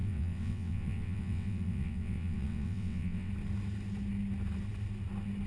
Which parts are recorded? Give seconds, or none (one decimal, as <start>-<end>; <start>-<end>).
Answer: 3.3-5.5